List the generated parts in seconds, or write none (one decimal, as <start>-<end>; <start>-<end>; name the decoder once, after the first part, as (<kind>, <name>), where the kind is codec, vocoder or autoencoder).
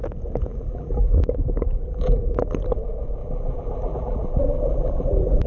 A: 0.5-2.3 (vocoder, BigVGAN v2); 3.2-5.5